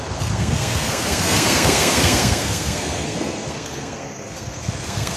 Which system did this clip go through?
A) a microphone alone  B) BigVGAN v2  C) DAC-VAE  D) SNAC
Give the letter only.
D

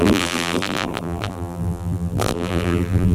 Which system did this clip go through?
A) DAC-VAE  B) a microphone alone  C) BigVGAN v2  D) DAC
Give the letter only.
C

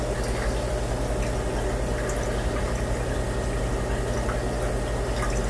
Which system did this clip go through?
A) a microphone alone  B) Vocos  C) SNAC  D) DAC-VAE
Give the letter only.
A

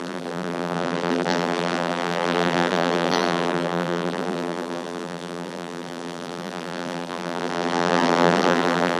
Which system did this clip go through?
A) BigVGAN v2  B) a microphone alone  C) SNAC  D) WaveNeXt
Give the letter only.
A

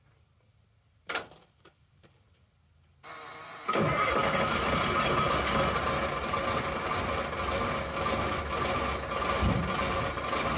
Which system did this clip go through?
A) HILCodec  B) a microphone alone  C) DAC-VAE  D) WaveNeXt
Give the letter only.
B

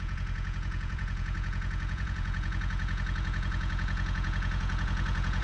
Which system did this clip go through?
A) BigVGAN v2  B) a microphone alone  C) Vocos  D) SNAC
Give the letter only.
C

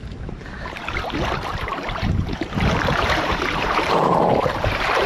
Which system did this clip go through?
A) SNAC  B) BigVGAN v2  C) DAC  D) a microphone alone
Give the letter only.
B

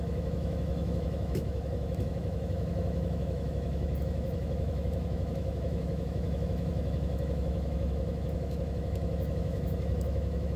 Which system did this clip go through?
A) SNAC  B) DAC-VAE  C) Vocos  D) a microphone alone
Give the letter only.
B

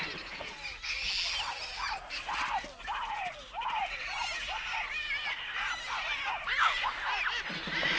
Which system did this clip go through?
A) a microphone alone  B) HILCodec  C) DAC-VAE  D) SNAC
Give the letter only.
A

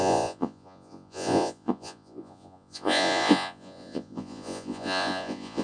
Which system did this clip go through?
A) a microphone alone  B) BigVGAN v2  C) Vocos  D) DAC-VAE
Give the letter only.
C